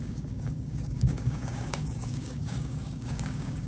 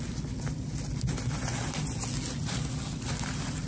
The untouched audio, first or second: second